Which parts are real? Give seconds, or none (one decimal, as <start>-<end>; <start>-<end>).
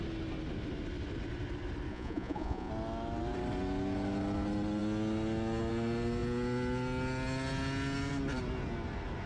0.0-1.9; 2.7-9.3